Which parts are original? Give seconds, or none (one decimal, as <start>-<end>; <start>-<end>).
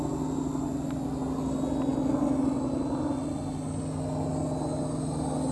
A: 0.0-5.5